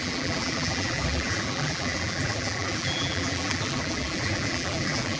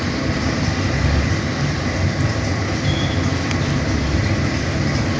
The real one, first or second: second